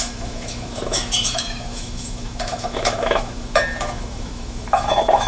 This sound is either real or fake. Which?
fake